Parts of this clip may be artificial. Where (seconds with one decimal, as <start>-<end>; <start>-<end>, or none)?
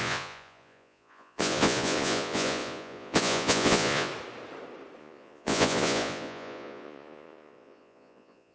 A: 0.0-4.1; 5.0-8.5